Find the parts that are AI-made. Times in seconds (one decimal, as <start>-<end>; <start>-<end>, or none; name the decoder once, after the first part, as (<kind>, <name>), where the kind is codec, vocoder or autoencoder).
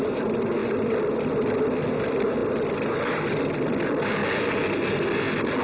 none